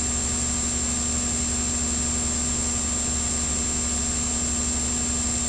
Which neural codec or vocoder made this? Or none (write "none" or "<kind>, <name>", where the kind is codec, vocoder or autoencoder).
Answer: none